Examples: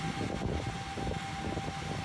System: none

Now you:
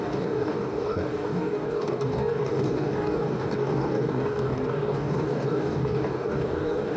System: codec, DAC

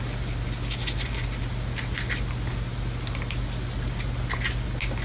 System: none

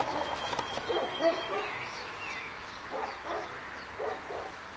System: autoencoder, DAC-VAE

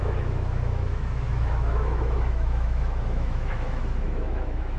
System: autoencoder, DAC-VAE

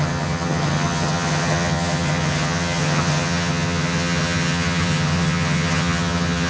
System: vocoder, HiFi-GAN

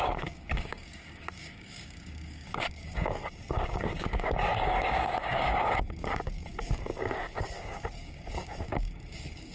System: codec, DAC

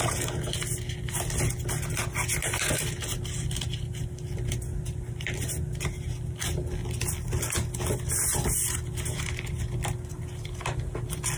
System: none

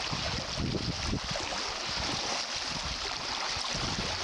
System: none